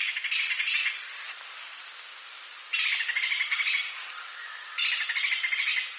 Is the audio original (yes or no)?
yes